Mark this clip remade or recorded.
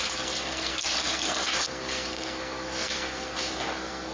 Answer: remade